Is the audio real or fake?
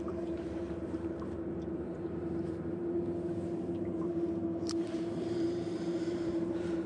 fake